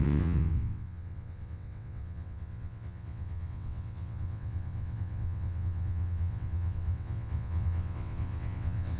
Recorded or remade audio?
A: remade